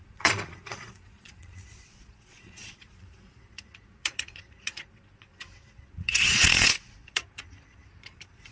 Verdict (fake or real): fake